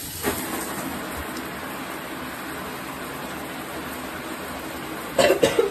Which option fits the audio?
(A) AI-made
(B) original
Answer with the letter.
B